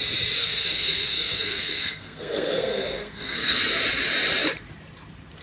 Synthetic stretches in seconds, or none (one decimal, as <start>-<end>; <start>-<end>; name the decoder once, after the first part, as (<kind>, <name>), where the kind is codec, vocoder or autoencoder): 0.4-3.6 (codec, SNAC)